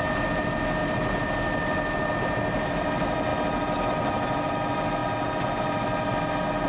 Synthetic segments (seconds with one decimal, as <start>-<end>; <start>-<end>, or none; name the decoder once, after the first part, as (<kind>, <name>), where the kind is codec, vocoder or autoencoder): none